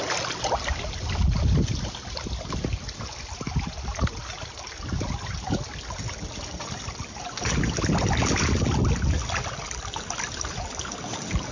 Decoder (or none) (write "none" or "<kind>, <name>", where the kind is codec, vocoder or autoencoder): none